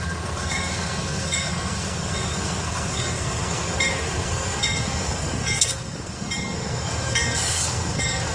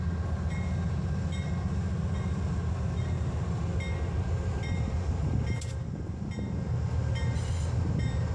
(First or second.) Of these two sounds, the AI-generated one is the first